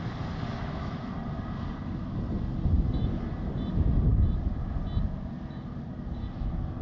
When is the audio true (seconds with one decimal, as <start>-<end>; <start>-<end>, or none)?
0.0-0.6; 1.1-6.8